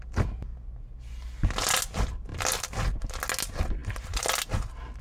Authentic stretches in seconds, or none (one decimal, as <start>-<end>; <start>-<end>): 0.0-5.0